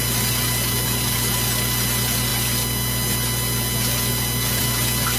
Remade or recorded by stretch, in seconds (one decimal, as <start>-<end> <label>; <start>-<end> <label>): 0.0-5.2 recorded